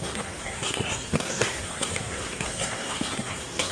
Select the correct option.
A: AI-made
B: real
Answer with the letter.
A